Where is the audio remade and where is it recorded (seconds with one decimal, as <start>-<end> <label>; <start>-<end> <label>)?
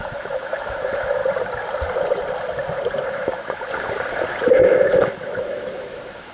0.0-1.2 remade; 1.2-3.1 recorded; 3.1-3.7 remade; 3.7-4.5 recorded; 4.5-6.3 remade